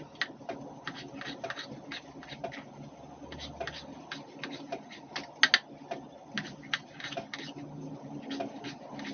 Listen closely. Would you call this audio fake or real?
real